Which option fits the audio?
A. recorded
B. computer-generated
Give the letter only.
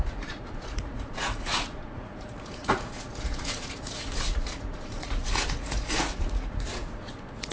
B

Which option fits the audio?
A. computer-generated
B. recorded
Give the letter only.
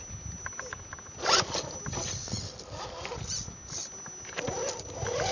B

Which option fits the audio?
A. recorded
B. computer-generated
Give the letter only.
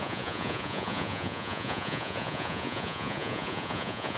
B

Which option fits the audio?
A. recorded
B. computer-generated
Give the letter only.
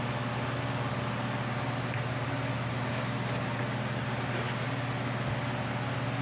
A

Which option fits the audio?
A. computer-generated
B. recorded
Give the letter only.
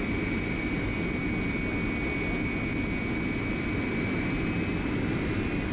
B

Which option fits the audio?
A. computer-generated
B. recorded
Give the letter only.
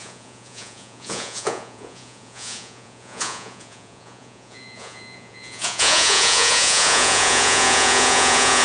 A